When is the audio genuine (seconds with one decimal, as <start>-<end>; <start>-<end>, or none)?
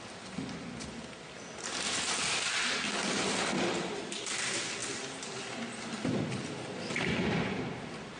0.0-8.2